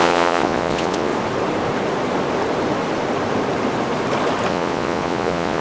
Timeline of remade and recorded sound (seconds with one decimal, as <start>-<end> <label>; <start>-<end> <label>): 0.0-1.1 remade; 1.1-4.5 recorded; 4.5-5.6 remade